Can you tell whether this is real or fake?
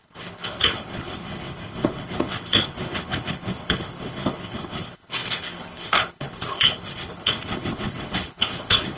fake